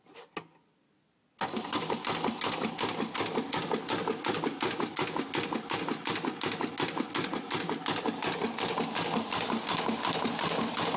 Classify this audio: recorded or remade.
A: recorded